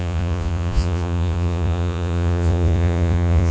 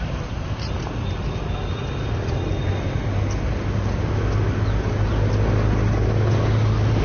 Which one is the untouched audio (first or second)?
second